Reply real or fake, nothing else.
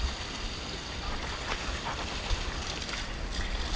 real